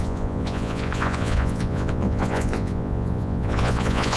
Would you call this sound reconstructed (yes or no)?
yes